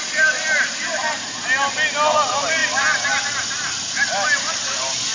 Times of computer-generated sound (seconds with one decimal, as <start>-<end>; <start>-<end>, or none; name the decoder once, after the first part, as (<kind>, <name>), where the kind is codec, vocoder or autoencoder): none